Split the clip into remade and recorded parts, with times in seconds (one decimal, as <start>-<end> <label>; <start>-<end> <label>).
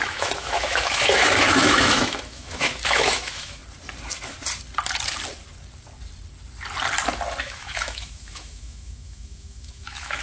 0.0-3.6 remade; 3.6-7.4 recorded; 7.4-10.2 remade